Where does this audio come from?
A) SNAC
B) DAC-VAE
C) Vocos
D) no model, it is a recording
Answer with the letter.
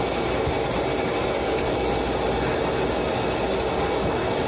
D